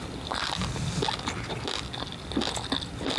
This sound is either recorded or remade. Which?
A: recorded